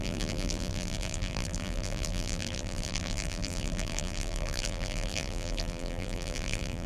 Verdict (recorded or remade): remade